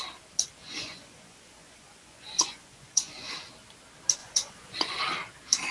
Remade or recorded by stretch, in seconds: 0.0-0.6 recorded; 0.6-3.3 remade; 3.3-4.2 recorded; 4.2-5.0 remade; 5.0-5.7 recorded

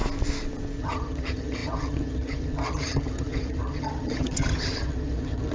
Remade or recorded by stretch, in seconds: 0.0-0.8 recorded; 0.8-5.5 remade

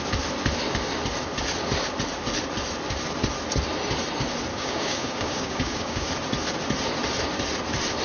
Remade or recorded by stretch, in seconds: 0.0-4.5 recorded; 4.5-6.1 remade; 6.1-8.0 recorded